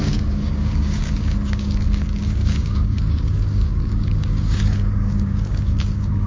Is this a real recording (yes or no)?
no